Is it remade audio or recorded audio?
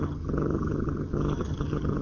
remade